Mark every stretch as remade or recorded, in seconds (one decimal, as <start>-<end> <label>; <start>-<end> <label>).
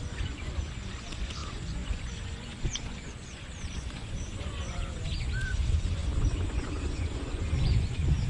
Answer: 0.0-8.3 remade